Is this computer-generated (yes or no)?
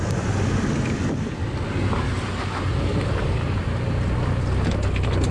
no